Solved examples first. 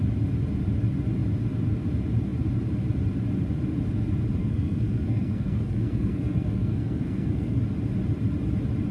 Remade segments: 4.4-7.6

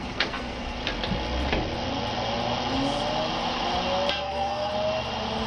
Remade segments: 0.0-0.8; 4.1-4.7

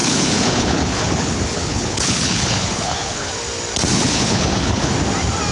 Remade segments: 0.0-3.3; 3.9-4.9

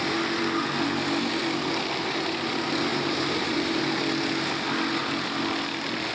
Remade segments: 2.9-3.8